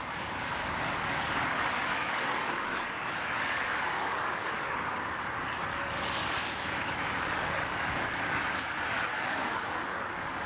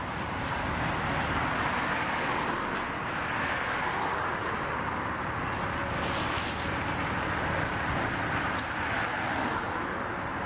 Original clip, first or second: second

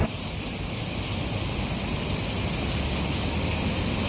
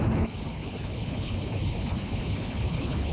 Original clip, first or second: first